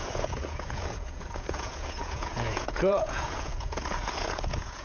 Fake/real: fake